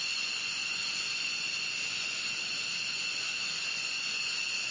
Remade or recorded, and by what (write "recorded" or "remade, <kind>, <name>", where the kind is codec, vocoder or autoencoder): remade, vocoder, Vocos